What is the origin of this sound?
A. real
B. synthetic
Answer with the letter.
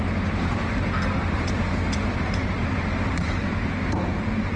B